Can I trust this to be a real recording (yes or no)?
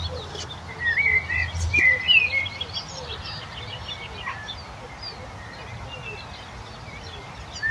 yes